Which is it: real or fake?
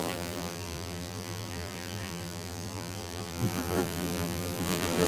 fake